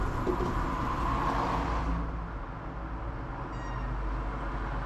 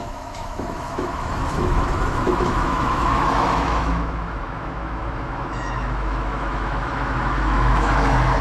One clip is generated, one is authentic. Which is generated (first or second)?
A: second